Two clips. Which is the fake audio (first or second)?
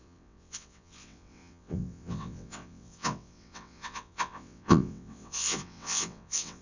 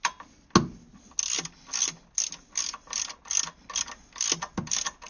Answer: first